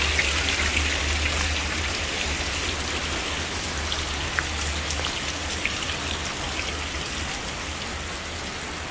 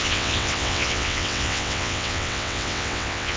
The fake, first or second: second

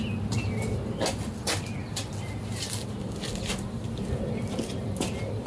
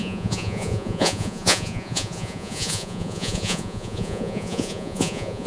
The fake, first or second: second